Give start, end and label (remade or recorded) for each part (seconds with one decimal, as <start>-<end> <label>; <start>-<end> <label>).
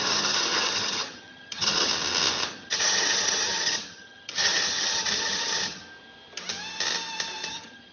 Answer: 0.0-1.9 remade; 1.9-2.5 recorded; 2.5-5.8 remade; 5.8-7.5 recorded; 7.5-7.9 remade